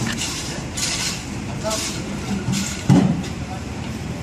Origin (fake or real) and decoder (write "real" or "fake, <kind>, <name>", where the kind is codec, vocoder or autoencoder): fake, vocoder, BigVGAN v2